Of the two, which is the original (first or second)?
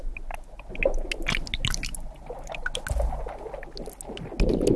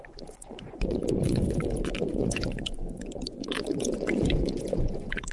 first